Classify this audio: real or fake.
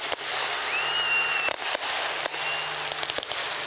real